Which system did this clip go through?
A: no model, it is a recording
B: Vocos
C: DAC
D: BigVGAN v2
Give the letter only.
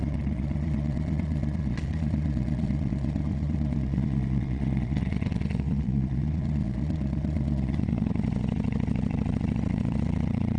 B